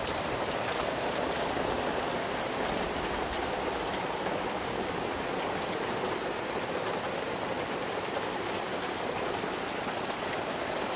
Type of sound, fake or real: real